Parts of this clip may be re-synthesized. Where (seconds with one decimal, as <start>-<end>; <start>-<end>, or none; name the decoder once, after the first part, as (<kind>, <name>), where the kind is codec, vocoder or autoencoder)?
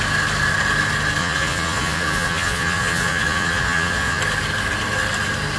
1.2-4.2 (vocoder, Vocos)